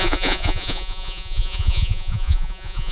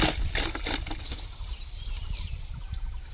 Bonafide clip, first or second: second